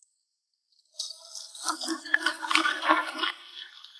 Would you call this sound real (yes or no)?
no